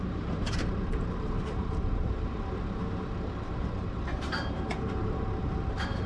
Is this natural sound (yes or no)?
no